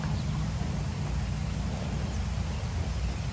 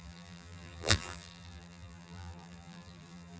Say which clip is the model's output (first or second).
second